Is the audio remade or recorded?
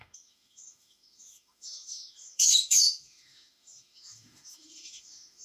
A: remade